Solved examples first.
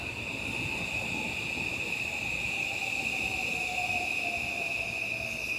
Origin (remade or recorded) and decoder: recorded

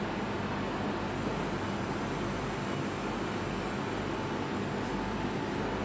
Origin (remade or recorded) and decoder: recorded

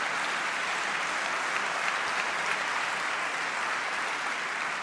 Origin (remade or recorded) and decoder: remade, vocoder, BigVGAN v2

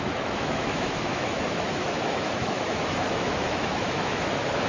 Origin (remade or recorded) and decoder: remade, autoencoder, DAC-VAE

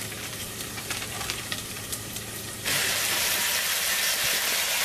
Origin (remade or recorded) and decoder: remade, vocoder, BigVGAN v2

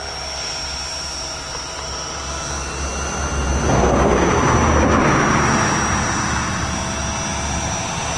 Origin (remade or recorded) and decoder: recorded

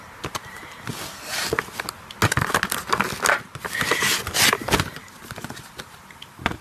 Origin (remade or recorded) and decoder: recorded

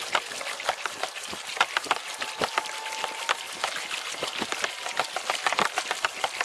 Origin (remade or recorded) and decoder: recorded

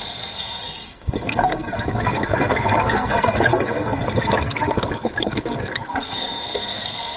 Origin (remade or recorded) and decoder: remade, codec, SNAC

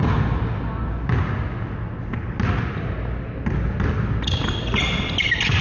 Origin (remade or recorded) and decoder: recorded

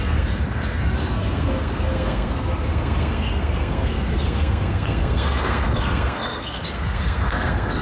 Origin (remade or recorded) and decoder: remade, codec, SNAC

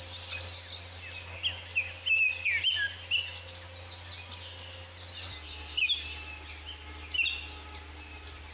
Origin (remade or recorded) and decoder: recorded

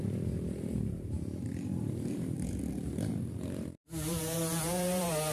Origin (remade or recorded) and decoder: remade, vocoder, BigVGAN v2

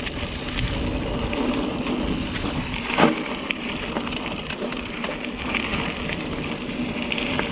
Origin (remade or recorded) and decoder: recorded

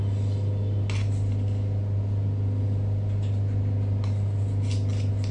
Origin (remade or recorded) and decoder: recorded